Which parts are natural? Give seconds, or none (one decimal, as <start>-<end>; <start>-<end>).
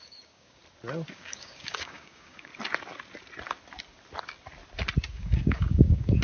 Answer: 0.6-1.1; 2.5-5.1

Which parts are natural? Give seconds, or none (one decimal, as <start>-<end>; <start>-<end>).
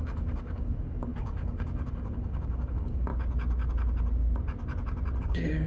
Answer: 3.1-5.2